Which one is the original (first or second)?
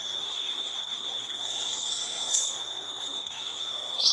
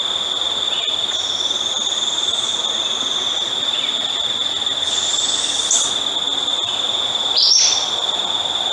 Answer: second